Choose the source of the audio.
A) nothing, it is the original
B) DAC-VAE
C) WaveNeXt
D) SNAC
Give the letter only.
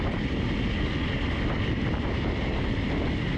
A